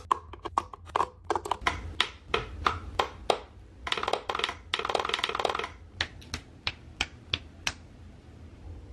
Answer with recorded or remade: recorded